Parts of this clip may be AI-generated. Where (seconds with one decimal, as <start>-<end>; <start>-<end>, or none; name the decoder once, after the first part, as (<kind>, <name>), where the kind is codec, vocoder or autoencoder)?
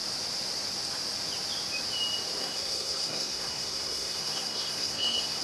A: 2.4-5.4 (codec, SNAC)